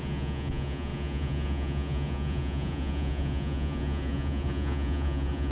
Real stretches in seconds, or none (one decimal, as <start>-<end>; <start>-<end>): none